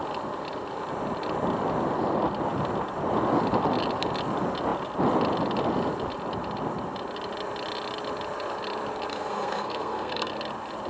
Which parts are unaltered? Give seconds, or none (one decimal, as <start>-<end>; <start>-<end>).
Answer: 0.0-9.1; 10.3-10.9